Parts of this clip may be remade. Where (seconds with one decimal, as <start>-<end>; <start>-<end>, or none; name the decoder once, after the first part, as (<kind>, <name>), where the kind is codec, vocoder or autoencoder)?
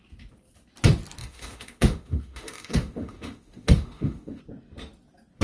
1.2-4.4 (autoencoder, DAC-VAE)